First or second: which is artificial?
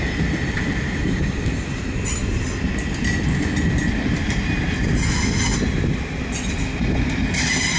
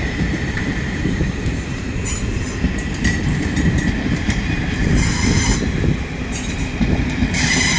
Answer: second